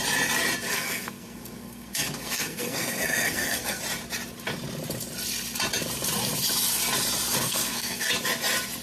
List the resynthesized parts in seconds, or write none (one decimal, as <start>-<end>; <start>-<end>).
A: 0.7-3.8; 7.4-8.1